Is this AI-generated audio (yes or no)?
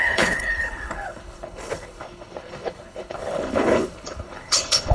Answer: yes